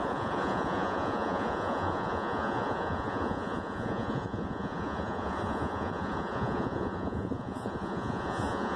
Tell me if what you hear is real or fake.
fake